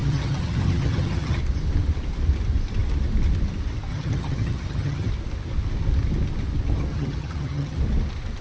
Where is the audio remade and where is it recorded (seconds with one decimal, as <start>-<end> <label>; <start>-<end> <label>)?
0.0-1.4 remade; 1.4-3.9 recorded; 3.9-5.1 remade; 5.1-6.9 recorded; 6.9-7.8 remade; 7.8-8.4 recorded